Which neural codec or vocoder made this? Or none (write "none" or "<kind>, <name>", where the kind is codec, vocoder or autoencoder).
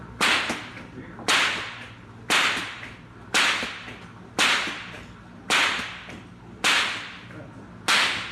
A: none